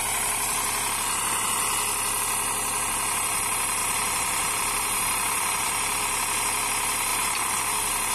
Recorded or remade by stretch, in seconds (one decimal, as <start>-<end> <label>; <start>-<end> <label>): 0.0-3.8 recorded; 3.8-6.0 remade; 6.0-8.1 recorded